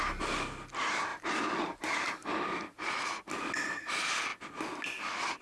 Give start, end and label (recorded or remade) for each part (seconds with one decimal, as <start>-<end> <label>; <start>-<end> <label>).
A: 0.0-5.4 recorded